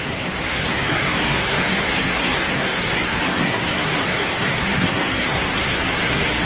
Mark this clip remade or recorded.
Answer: remade